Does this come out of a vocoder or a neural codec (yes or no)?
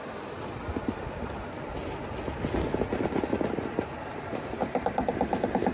no